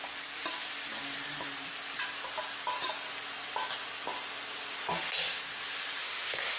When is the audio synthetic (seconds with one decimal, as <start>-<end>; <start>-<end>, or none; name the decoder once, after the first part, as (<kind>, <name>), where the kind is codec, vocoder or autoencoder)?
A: 6.0-6.6 (autoencoder, DAC-VAE)